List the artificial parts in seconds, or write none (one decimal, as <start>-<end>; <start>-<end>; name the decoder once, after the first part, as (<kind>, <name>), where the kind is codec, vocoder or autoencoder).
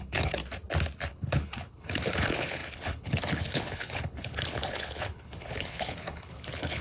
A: 0.0-0.4 (codec, HILCodec); 1.1-6.8